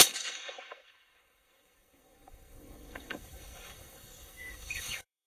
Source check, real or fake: fake